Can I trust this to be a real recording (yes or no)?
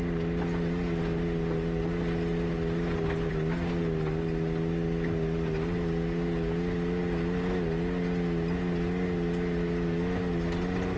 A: yes